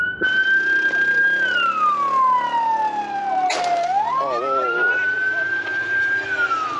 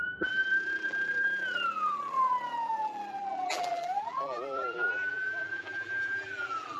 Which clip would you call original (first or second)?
first